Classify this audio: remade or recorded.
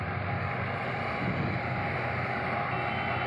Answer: recorded